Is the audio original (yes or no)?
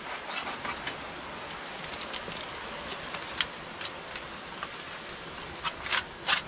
yes